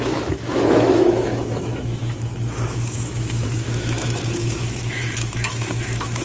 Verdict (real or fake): fake